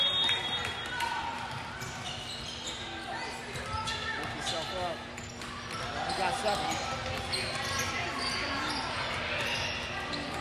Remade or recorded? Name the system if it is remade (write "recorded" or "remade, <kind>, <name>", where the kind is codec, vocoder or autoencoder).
recorded